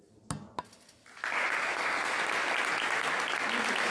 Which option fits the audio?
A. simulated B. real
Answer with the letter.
B